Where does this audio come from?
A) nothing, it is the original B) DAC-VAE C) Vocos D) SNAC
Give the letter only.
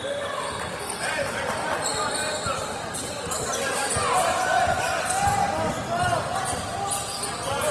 A